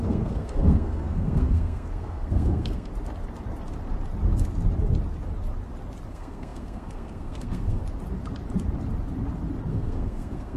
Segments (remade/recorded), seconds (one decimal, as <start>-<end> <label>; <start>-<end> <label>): 0.0-2.9 remade; 2.9-6.1 recorded; 6.1-7.8 remade; 7.8-9.7 recorded; 9.7-10.6 remade

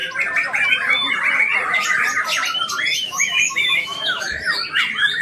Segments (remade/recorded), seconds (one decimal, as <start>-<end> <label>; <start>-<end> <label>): 0.0-2.9 recorded; 2.9-4.5 remade; 4.5-5.2 recorded